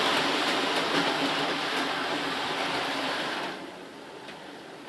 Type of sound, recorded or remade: remade